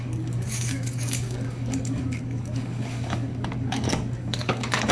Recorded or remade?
remade